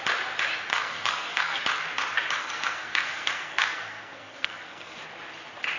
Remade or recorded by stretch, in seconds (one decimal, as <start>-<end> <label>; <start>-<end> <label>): 0.0-0.7 recorded; 0.7-1.6 remade; 1.6-2.4 recorded; 2.4-5.0 remade; 5.0-5.8 recorded